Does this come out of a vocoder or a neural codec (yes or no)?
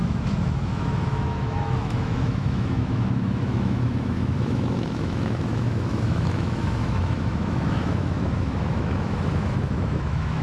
yes